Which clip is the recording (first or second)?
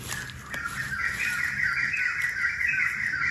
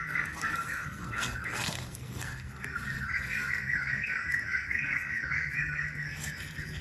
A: first